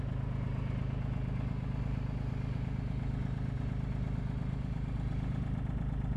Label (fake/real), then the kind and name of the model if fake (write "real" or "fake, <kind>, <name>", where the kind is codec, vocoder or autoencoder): real